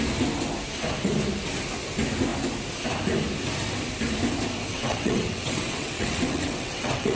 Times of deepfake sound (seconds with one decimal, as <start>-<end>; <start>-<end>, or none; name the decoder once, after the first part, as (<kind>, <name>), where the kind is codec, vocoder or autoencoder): 4.7-7.2 (vocoder, WaveNeXt)